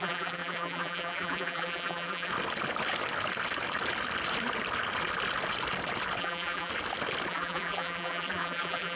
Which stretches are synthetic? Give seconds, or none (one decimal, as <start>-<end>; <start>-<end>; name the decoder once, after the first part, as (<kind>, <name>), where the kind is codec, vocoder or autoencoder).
0.0-2.3 (vocoder, BigVGAN v2); 6.2-6.7; 7.3-9.0